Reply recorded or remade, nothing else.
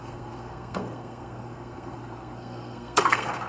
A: remade